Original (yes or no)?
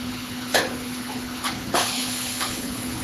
no